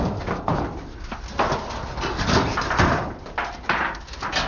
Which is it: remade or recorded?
recorded